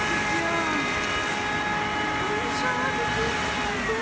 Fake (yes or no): no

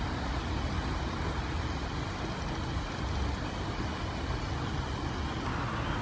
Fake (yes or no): no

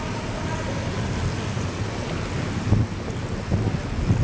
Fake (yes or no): no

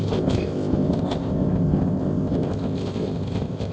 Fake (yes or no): yes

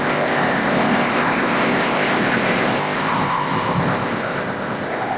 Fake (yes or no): yes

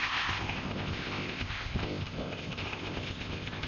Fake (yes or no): yes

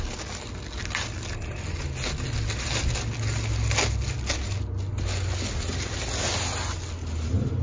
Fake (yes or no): no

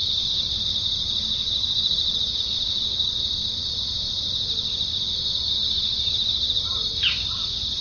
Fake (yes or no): no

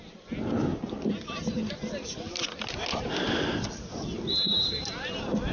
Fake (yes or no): no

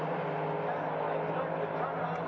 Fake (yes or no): no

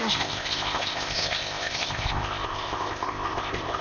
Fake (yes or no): yes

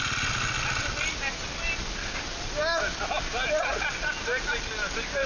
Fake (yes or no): no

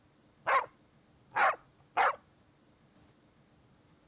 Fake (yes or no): no